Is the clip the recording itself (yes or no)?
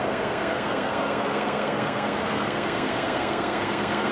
no